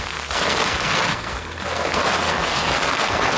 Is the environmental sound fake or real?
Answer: fake